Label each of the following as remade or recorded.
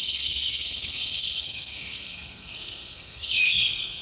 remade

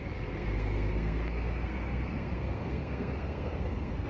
remade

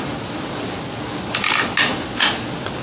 recorded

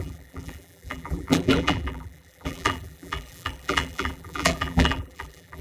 remade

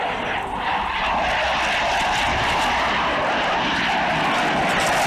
recorded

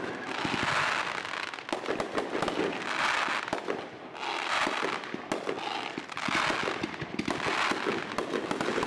recorded